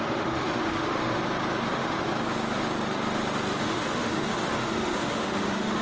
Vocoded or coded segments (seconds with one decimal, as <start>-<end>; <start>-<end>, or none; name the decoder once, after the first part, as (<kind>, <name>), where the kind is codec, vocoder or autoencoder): 0.0-1.2 (autoencoder, DAC-VAE); 1.7-2.1; 3.6-5.8